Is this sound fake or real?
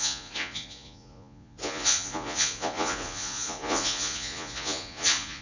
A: fake